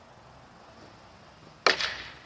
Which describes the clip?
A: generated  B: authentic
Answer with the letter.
B